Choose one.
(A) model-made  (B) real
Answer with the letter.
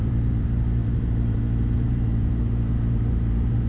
A